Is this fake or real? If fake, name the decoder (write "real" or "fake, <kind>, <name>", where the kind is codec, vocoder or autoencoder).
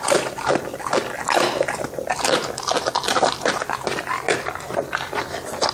real